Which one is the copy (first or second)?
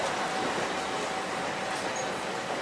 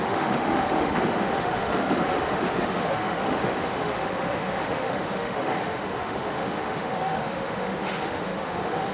second